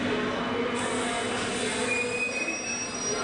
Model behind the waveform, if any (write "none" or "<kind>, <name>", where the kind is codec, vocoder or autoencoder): none